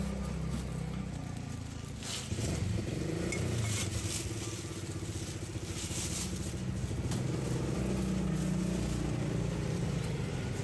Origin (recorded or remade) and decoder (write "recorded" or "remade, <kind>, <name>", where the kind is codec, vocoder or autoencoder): recorded